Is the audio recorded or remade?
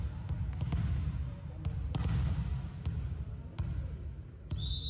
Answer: recorded